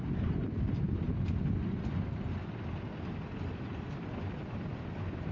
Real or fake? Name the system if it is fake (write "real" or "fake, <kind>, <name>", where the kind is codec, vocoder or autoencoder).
real